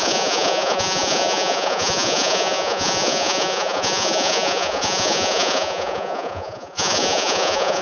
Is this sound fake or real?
fake